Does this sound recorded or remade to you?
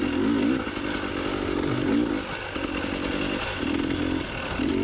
recorded